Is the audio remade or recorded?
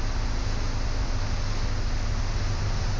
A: recorded